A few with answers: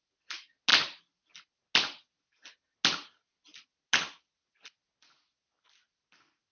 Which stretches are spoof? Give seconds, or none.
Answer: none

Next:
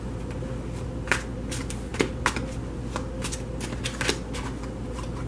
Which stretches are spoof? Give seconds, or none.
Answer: none

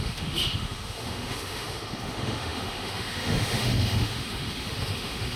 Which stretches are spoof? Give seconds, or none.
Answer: 0.0-5.4 (autoencoder, DAC-VAE)

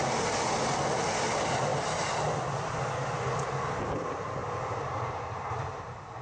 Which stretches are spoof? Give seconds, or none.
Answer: none

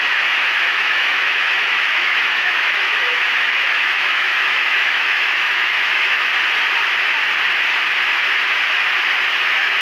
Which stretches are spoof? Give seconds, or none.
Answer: 0.0-6.3 (autoencoder, DAC-VAE); 9.4-9.8

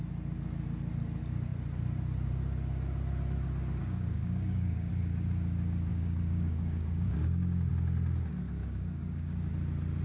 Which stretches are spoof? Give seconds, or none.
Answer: 3.8-4.9 (codec, DAC); 5.9-7.7; 8.6-9.5